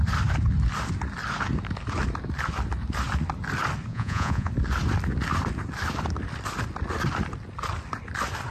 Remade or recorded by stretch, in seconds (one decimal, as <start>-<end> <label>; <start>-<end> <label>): 0.0-3.9 recorded; 3.9-4.5 remade; 4.5-8.5 recorded